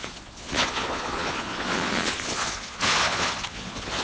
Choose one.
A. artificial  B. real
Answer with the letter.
A